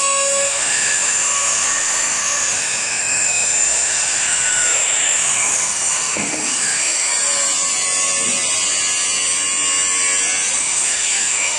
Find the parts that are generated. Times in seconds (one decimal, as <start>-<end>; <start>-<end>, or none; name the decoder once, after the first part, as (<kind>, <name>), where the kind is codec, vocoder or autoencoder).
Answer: 0.0-7.1 (autoencoder, DAC-VAE); 10.6-11.6